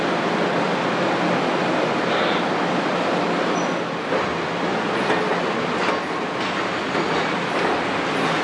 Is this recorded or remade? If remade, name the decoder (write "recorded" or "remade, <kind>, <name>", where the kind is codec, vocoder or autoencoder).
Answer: recorded